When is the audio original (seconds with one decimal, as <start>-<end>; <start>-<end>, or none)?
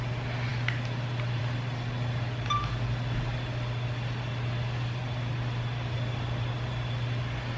0.0-7.6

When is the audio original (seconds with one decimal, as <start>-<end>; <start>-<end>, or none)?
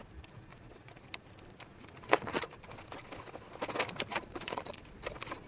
0.0-0.5; 1.0-1.7; 2.5-4.1; 5.0-5.5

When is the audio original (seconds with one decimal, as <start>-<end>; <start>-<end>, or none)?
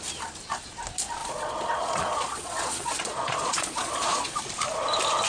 0.0-1.2; 4.4-5.3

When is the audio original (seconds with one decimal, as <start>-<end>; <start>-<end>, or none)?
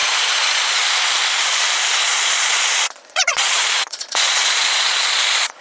0.9-2.0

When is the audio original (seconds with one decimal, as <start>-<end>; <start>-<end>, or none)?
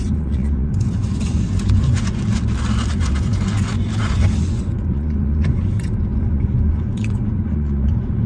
2.3-2.9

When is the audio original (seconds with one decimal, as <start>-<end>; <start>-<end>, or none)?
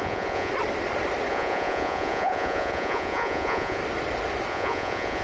0.5-1.3; 3.8-4.5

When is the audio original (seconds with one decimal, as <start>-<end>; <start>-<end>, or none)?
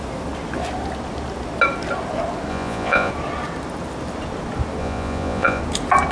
0.0-2.5; 3.1-4.8; 5.6-6.1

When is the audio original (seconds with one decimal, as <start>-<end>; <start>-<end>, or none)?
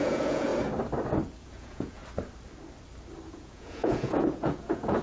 0.5-1.4; 2.0-3.3